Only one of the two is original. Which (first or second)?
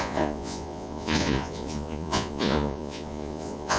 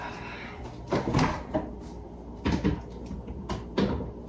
second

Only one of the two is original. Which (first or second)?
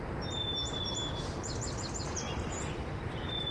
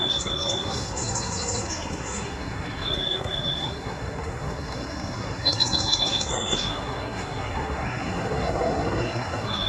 first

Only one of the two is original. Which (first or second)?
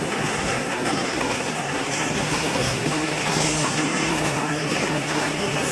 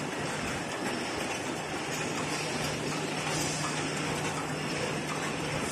second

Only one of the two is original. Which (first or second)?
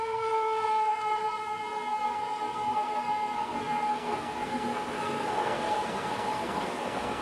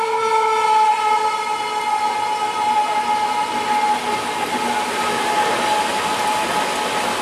second